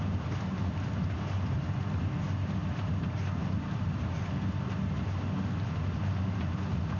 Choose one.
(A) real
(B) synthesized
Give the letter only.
A